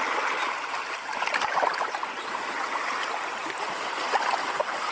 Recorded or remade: recorded